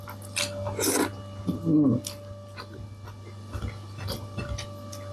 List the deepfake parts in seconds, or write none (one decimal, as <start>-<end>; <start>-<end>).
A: none